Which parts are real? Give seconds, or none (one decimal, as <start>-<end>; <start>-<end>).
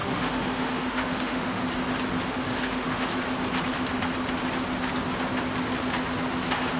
1.6-2.3; 3.1-6.8